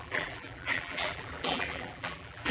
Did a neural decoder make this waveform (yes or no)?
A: yes